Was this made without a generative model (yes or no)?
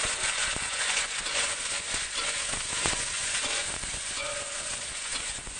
no